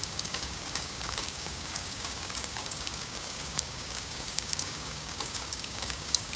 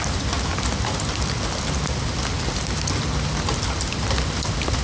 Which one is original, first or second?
second